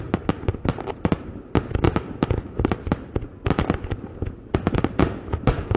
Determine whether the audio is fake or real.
real